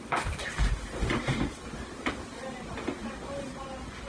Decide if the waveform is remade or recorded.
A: recorded